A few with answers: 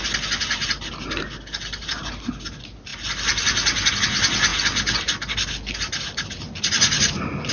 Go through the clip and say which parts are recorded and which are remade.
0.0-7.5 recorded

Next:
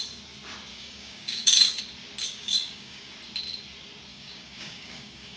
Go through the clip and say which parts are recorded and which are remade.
0.0-0.7 recorded; 0.7-1.8 remade; 1.8-2.2 recorded; 2.2-3.1 remade; 3.1-4.1 recorded; 4.1-5.4 remade

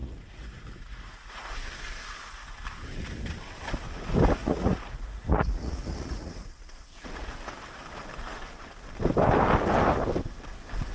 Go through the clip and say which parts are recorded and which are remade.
0.0-1.5 remade; 1.5-4.4 recorded; 4.4-7.3 remade; 7.3-10.9 recorded